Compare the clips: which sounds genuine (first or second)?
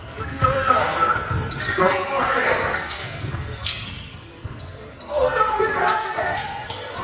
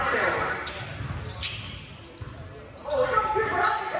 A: second